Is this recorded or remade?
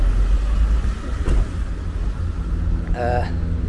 recorded